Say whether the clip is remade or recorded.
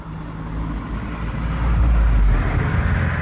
recorded